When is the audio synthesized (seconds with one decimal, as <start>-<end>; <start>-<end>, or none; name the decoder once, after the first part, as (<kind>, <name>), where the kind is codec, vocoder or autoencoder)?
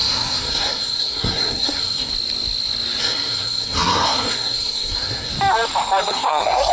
0.0-2.1 (codec, SNAC); 3.0-5.3; 6.0-6.7